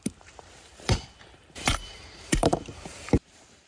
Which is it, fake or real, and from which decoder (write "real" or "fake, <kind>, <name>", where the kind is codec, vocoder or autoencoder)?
fake, vocoder, BigVGAN v2